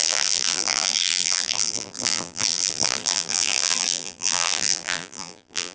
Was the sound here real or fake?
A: fake